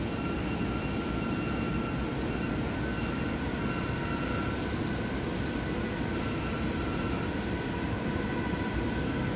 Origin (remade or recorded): recorded